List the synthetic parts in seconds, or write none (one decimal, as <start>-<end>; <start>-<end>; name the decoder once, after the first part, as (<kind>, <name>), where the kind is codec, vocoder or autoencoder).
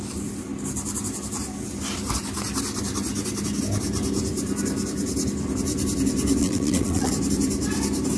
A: 6.4-7.1 (vocoder, WaveNeXt)